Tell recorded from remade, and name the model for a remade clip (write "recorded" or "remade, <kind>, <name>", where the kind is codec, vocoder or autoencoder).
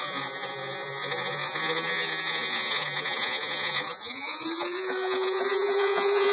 remade, vocoder, Vocos